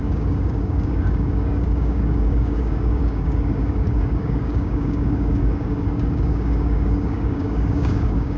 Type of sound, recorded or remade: remade